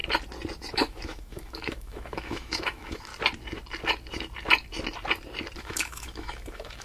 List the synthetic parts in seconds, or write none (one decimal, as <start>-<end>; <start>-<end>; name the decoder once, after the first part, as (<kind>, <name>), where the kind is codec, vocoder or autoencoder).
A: 0.7-3.1 (autoencoder, DAC-VAE); 5.6-6.8